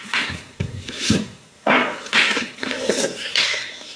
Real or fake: fake